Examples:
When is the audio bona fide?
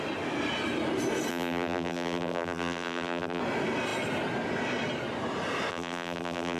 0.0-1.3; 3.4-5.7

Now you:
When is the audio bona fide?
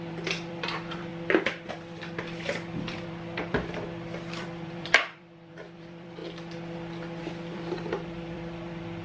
1.1-1.7; 6.2-7.5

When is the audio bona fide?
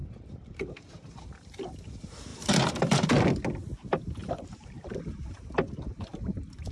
1.5-2.3; 3.1-4.2; 5.5-6.7